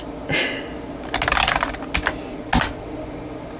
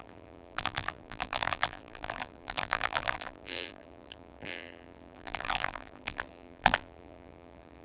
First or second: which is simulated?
second